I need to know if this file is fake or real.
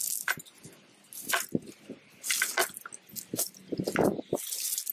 real